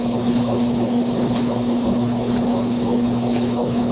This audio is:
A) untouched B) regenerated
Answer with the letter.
B